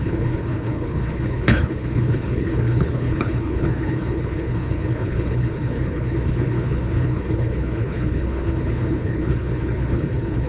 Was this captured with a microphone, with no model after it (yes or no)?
no